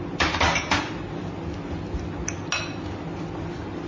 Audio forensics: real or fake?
real